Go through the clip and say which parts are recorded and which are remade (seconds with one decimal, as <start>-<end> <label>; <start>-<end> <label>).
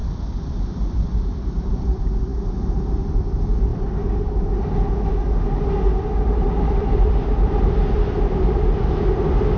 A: 0.0-2.3 remade; 2.3-3.1 recorded; 3.1-3.7 remade; 3.7-6.7 recorded; 6.7-9.6 remade